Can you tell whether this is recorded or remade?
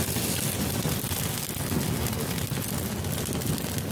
recorded